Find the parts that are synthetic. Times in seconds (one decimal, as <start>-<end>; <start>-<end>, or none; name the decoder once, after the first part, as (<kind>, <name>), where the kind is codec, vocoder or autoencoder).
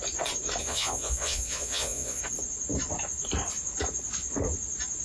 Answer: 0.6-2.2 (vocoder, Vocos)